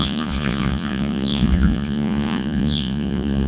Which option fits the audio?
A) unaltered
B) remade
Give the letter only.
B